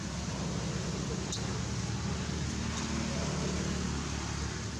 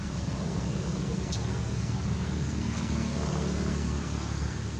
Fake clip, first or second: second